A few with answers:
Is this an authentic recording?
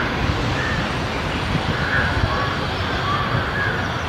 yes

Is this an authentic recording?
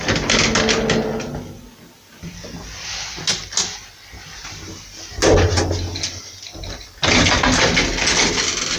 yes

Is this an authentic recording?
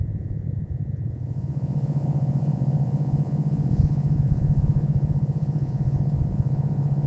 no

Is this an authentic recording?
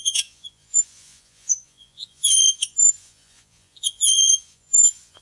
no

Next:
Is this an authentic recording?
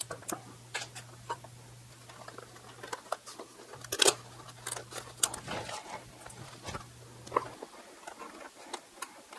yes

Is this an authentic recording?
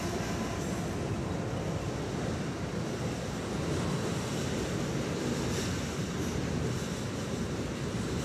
yes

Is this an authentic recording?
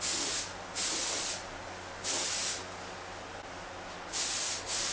yes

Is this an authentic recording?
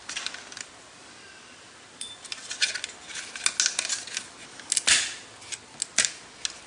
yes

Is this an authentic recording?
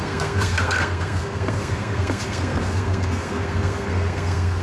no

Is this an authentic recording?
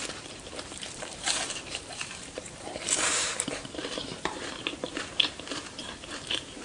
no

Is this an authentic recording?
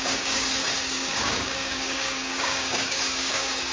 no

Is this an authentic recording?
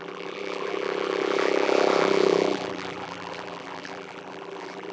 no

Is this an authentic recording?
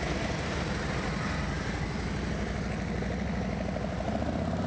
yes